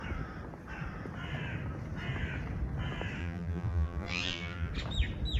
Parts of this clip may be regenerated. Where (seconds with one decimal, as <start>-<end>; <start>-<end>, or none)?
3.2-4.7